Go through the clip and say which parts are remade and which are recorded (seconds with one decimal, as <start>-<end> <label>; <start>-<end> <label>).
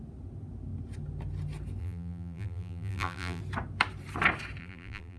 0.0-1.8 recorded; 1.8-3.4 remade; 3.4-4.6 recorded; 4.6-5.2 remade